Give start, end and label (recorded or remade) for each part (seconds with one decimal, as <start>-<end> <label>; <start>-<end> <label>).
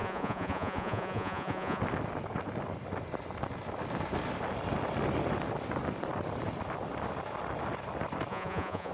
0.0-1.8 remade; 1.8-8.3 recorded; 8.3-8.9 remade